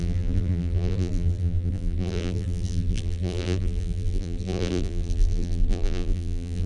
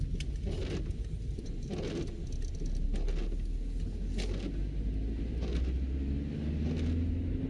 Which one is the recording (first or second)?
second